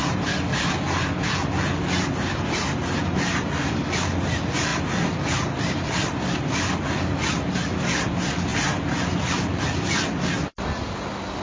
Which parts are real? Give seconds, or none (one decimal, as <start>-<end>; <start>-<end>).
0.6-4.7; 6.2-11.4

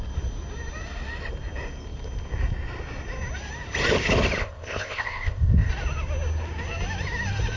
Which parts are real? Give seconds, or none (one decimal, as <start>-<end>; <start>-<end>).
0.0-4.4; 5.7-7.6